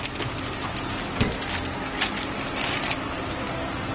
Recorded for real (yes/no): yes